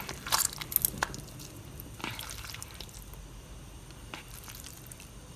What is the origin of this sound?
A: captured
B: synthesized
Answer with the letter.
A